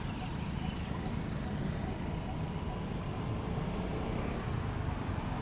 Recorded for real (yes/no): yes